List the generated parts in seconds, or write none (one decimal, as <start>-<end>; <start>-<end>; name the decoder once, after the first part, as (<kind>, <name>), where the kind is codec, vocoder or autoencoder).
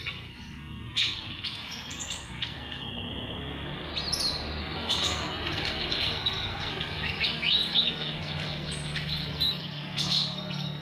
0.0-3.9 (codec, SNAC); 4.6-10.8